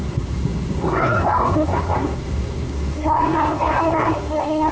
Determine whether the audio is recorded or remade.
remade